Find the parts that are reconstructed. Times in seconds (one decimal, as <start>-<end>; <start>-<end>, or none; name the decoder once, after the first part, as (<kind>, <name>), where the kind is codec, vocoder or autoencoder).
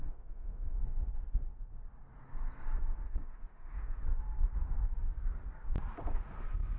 0.0-0.8 (autoencoder, DAC-VAE); 3.2-4.0